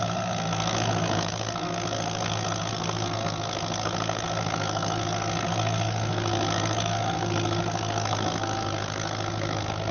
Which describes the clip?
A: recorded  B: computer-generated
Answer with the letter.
B